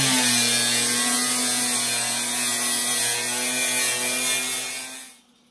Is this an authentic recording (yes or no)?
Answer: yes